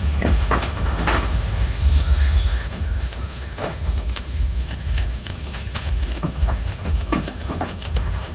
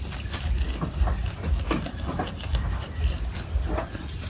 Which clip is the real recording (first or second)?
second